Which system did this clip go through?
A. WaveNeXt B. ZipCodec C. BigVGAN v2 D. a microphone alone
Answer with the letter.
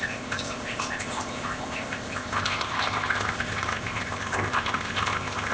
B